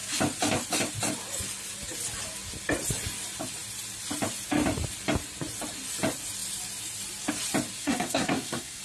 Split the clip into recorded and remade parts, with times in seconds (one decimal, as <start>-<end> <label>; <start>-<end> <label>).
0.0-7.8 recorded; 7.8-8.8 remade